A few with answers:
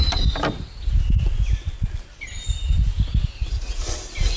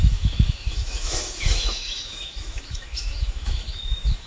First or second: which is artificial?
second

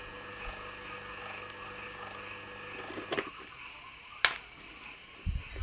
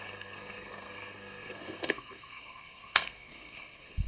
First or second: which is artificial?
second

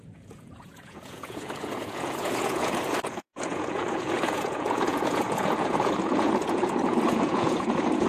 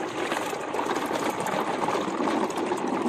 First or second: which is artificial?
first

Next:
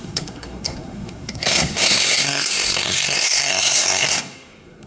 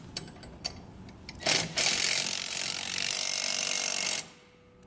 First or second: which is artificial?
first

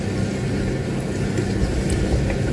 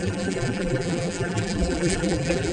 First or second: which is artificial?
second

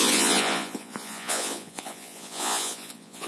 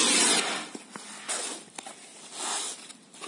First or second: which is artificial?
first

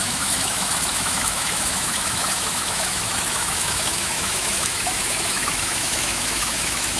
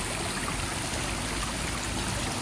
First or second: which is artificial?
first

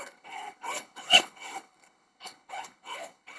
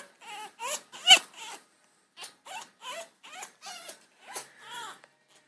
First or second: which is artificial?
first